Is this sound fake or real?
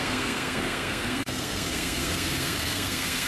fake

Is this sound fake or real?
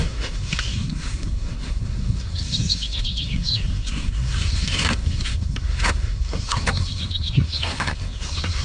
fake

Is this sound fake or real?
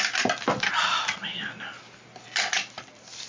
real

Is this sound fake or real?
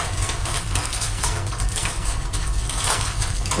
fake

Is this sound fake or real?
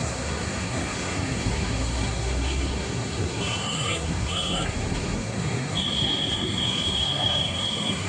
fake